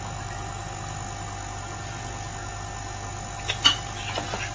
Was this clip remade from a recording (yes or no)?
no